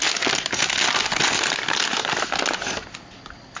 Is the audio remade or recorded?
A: recorded